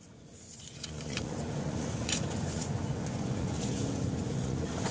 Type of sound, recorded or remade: remade